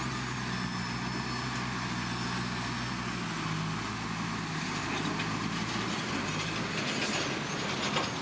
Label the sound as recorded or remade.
recorded